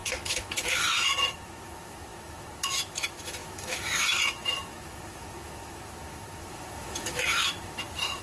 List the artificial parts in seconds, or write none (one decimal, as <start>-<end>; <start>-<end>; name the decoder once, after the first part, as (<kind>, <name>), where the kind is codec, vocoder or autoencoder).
0.0-8.2 (autoencoder, DAC-VAE)

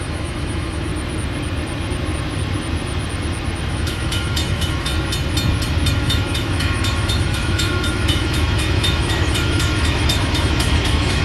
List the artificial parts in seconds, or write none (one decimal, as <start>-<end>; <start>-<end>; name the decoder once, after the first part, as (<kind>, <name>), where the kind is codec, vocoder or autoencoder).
0.0-0.9 (autoencoder, DAC-VAE); 3.7-4.9; 5.9-11.2

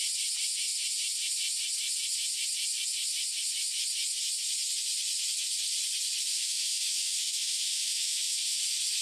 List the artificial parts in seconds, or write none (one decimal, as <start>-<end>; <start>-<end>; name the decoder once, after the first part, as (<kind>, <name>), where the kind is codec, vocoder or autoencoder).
6.3-8.6 (autoencoder, DAC-VAE)

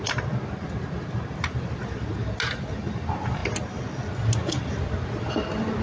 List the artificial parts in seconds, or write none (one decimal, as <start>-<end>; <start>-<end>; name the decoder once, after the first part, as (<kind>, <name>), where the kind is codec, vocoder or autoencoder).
none